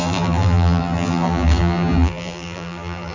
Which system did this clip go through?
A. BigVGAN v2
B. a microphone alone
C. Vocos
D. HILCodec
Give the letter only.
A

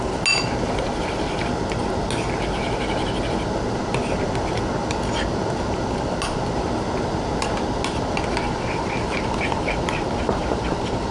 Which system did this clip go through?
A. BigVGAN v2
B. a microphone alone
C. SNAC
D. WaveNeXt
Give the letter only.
B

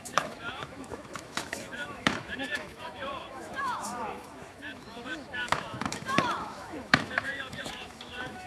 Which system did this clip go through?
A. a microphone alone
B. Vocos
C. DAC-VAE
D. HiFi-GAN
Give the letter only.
C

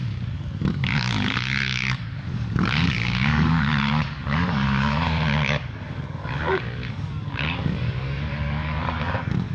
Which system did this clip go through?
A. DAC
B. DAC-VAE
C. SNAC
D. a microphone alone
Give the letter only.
A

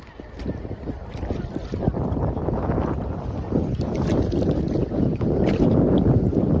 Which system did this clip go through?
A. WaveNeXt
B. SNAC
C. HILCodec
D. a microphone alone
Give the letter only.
D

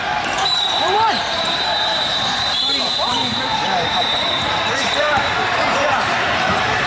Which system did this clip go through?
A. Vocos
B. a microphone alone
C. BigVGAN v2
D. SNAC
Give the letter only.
C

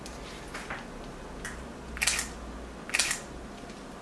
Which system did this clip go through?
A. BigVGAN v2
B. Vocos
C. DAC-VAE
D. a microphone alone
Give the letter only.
D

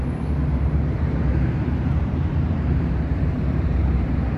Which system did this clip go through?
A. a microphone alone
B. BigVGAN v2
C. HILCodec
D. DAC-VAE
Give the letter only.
B